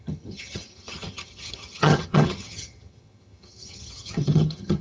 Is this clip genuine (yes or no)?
no